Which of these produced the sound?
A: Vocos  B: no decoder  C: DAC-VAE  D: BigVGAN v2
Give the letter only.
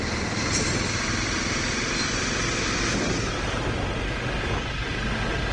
B